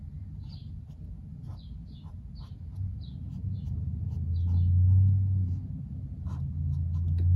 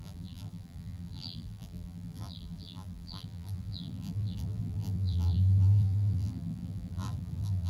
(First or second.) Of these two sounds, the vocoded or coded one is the second